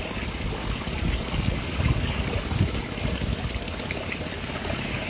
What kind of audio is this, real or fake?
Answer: fake